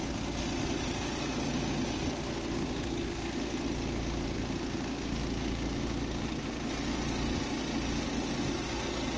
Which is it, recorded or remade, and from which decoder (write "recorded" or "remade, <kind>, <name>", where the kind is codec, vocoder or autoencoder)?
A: recorded